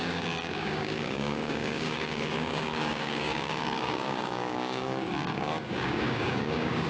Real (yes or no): no